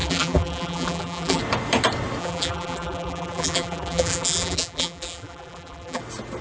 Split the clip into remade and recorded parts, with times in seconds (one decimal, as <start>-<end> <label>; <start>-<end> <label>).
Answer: 0.0-1.4 remade; 1.4-2.2 recorded; 2.2-6.0 remade; 6.0-6.4 recorded